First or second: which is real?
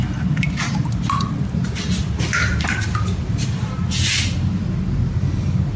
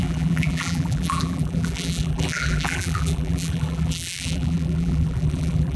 first